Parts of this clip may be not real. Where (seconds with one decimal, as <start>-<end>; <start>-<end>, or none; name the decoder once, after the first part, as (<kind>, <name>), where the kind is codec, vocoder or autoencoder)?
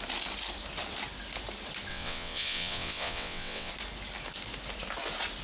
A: 1.9-3.7 (vocoder, WaveNeXt)